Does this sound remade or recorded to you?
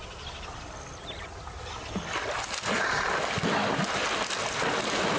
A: recorded